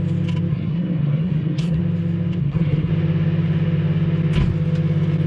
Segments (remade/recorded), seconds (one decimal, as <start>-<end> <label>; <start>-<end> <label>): 0.0-0.5 recorded; 0.5-1.8 remade; 1.8-2.4 recorded; 2.4-2.9 remade; 2.9-5.3 recorded